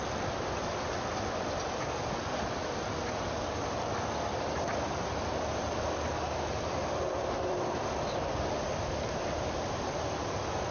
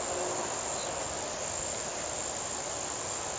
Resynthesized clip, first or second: first